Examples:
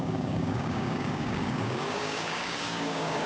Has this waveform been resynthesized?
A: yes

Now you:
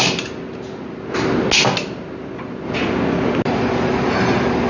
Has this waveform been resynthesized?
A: no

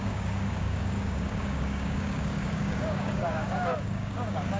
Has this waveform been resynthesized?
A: yes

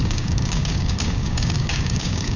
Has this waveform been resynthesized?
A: yes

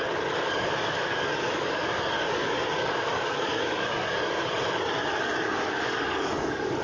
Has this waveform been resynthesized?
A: yes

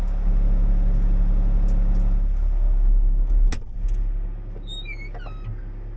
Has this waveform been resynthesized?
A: no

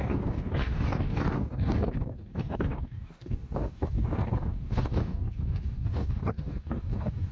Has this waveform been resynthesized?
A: yes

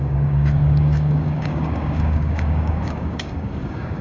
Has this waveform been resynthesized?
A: yes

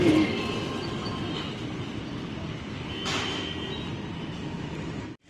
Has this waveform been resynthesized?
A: no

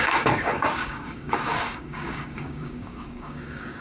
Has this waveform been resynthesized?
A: yes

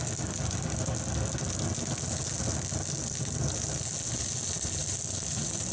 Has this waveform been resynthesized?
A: no